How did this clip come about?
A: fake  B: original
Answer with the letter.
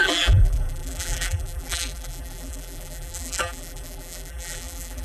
A